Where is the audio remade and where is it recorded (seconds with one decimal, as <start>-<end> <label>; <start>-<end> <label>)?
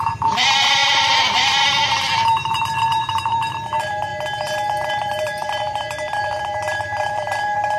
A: 0.0-4.1 remade; 4.1-4.9 recorded; 4.9-7.8 remade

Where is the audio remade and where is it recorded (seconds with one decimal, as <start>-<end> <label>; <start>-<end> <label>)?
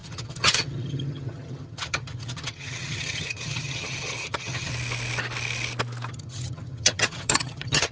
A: 0.0-4.7 remade; 4.7-6.1 recorded; 6.1-7.9 remade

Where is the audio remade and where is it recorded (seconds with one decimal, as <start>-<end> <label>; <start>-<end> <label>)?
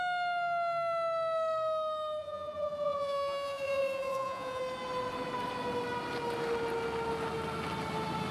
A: 0.0-2.2 recorded; 2.2-4.6 remade; 4.6-8.3 recorded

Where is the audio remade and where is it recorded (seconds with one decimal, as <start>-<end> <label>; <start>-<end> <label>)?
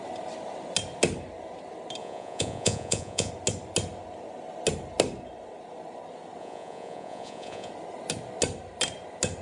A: 0.0-2.0 recorded; 2.0-3.3 remade; 3.3-6.4 recorded; 6.4-7.7 remade; 7.7-9.4 recorded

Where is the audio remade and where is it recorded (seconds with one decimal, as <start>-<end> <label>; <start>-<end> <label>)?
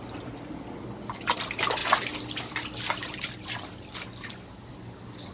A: 0.0-5.3 recorded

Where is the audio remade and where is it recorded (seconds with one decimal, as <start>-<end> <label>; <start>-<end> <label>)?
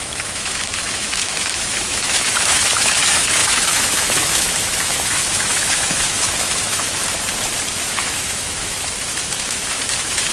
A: 0.0-7.0 remade; 7.0-7.7 recorded; 7.7-10.3 remade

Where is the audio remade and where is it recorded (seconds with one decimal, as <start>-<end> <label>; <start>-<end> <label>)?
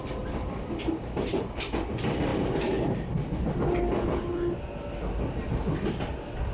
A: 0.0-6.5 recorded